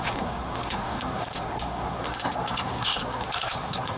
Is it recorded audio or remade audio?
remade